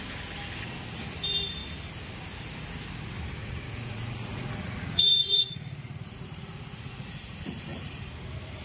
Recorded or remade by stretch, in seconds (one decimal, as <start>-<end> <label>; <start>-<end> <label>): 0.0-3.4 recorded; 3.4-8.0 remade; 8.0-8.6 recorded